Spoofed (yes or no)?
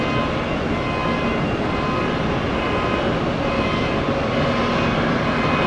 no